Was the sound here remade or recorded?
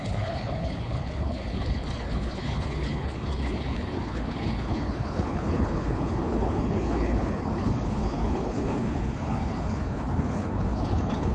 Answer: remade